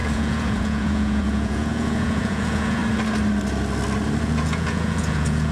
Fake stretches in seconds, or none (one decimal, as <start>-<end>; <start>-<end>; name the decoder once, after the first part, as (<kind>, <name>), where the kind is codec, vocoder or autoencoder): 0.0-2.8 (vocoder, Vocos); 4.2-5.5